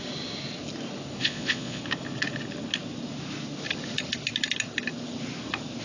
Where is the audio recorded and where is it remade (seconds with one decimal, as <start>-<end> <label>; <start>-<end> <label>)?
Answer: 0.0-1.2 recorded; 1.2-1.8 remade; 1.8-5.8 recorded